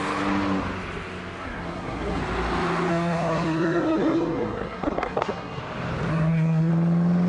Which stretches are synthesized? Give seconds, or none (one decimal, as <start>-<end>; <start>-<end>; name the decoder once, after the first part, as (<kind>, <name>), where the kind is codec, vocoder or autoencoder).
1.4-2.2 (codec, SNAC); 2.9-5.6; 6.1-6.7

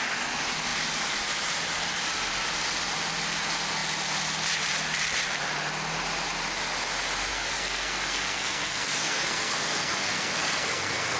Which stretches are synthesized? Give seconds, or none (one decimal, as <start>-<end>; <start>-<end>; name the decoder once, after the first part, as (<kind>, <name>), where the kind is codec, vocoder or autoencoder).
7.3-11.2 (codec, SNAC)

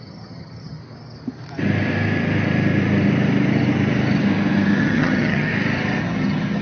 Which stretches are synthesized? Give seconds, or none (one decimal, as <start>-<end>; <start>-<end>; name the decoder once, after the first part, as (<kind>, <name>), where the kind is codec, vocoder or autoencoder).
0.0-0.8 (vocoder, HiFi-GAN); 4.8-5.5; 6.0-6.6

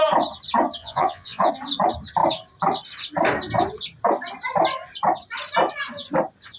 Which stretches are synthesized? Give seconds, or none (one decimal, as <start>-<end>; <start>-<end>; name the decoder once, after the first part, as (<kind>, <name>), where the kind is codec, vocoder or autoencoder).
0.8-1.5 (vocoder, Vocos)